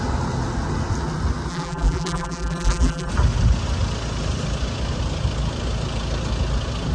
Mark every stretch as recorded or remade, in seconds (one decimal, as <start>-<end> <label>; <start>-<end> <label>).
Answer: 0.0-1.5 recorded; 1.5-3.1 remade; 3.1-6.9 recorded